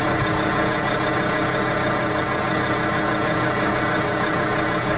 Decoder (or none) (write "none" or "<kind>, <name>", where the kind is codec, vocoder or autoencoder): none